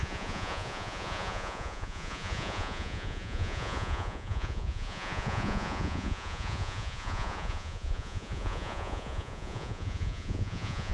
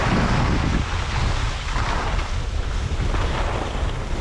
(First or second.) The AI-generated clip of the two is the first